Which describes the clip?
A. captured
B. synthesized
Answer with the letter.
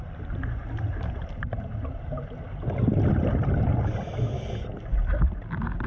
A